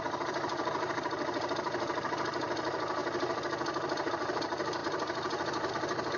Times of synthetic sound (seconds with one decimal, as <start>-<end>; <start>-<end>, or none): 0.0-3.0; 4.1-6.2